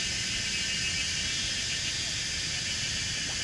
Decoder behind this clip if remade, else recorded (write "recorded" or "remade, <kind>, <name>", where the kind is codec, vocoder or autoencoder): recorded